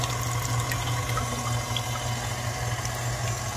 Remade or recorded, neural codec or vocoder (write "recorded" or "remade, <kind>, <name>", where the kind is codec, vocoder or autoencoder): recorded